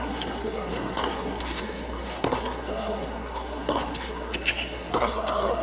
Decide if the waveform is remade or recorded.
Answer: remade